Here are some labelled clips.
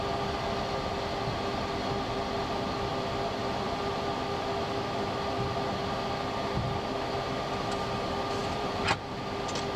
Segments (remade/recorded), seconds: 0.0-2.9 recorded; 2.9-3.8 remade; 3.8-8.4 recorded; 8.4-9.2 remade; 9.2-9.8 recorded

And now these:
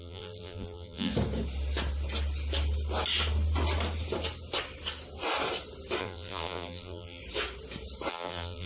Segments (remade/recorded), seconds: 0.0-1.1 remade; 1.1-6.0 recorded; 6.0-7.2 remade; 7.2-8.1 recorded; 8.1-8.7 remade